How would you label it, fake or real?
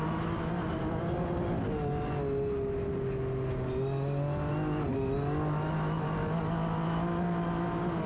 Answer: real